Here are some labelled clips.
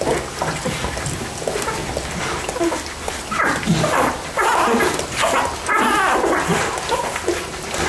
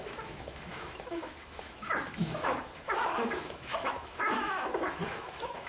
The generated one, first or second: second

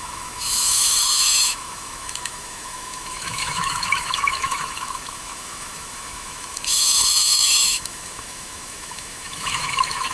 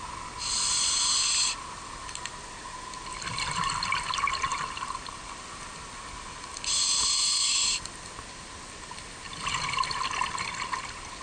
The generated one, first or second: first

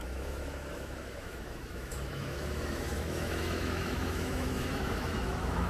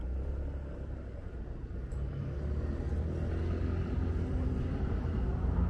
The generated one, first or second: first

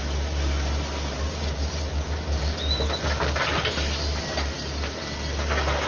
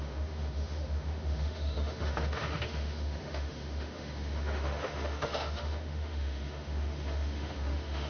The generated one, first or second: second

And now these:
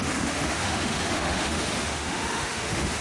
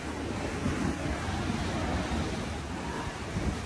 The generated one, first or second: first